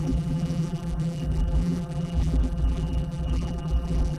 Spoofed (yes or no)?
yes